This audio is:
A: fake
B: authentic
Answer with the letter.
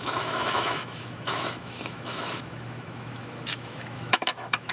A